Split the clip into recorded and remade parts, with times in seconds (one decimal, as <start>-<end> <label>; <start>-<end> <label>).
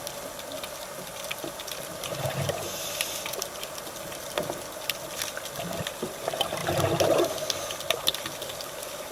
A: 0.0-9.1 recorded